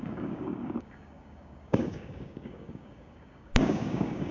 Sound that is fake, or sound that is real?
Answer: fake